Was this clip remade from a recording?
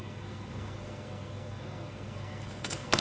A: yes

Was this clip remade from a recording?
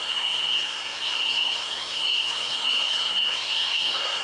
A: yes